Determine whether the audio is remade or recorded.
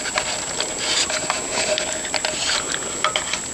recorded